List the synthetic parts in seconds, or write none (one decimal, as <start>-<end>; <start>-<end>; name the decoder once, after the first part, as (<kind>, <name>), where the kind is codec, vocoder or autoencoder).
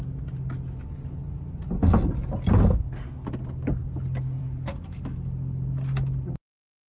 none